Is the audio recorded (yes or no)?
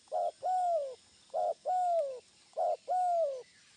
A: yes